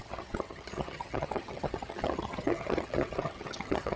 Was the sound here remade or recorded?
remade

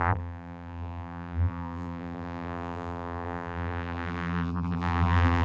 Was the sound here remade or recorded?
remade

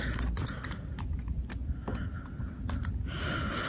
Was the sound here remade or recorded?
recorded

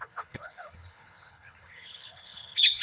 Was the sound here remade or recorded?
remade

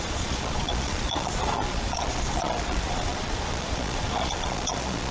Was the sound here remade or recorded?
remade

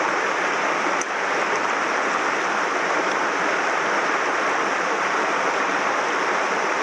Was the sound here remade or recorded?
recorded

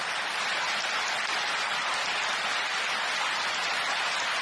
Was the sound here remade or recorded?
recorded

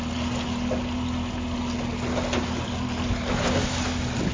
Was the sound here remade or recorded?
recorded